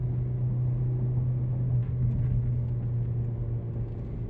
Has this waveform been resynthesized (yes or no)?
no